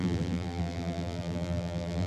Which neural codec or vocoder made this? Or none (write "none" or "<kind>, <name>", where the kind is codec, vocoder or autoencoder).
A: vocoder, BigVGAN v2